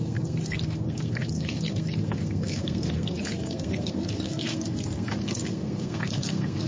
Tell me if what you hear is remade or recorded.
remade